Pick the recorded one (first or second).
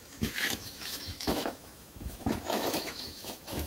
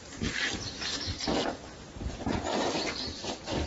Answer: second